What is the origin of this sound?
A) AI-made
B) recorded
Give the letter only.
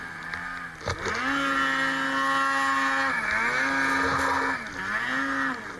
B